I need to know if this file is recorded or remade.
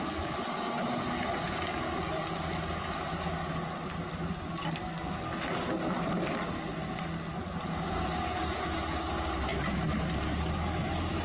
recorded